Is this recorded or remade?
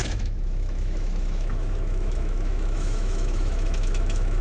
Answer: remade